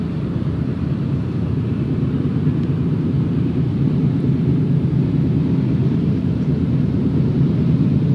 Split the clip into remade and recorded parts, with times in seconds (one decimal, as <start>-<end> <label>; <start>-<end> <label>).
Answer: 0.0-8.1 remade